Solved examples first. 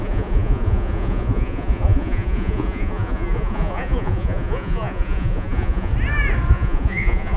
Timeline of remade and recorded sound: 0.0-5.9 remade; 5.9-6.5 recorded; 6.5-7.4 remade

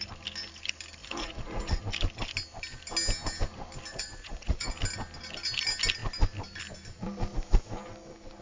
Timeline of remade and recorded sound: 0.0-1.0 recorded; 1.0-1.8 remade; 1.8-3.9 recorded; 3.9-4.7 remade; 4.7-8.4 recorded

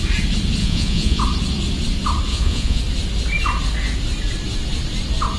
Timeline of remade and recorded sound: 0.0-0.6 recorded; 0.6-1.2 remade; 1.2-2.3 recorded; 2.3-2.8 remade; 2.8-5.4 recorded

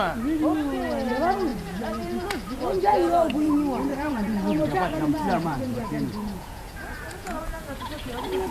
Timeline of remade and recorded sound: 0.0-1.5 recorded; 1.5-3.5 remade; 3.5-3.9 recorded; 3.9-8.5 remade

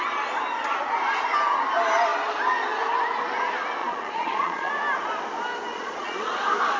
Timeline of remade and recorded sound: 0.0-3.8 recorded; 3.8-4.7 remade; 4.7-5.7 recorded; 5.7-6.3 remade; 6.3-6.8 recorded

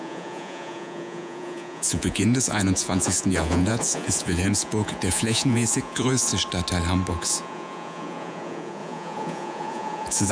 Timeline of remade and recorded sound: 0.0-6.3 remade; 6.3-7.1 recorded; 7.1-10.3 remade

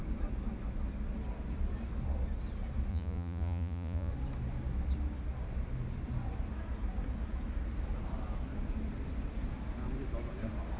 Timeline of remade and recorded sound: 0.0-2.9 recorded; 2.9-4.1 remade; 4.1-10.8 recorded